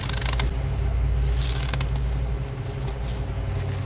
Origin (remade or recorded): recorded